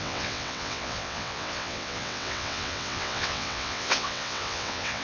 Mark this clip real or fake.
fake